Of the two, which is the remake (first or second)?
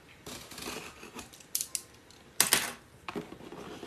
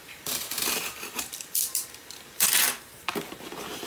second